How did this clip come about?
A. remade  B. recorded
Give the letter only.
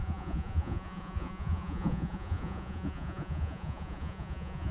A